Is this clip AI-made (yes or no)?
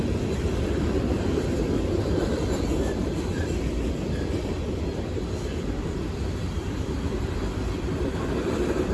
yes